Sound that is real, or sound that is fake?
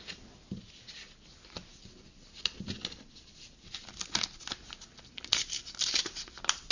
real